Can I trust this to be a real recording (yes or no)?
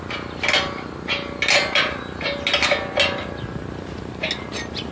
yes